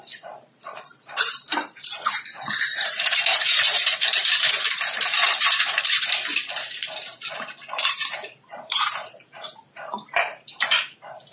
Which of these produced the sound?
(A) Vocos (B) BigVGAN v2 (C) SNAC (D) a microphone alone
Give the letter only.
B